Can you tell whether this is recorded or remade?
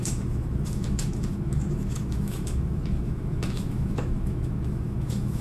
remade